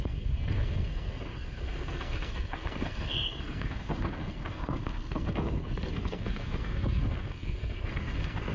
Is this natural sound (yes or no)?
no